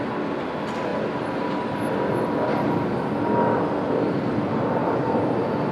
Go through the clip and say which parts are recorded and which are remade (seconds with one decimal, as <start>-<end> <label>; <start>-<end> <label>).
0.0-5.7 recorded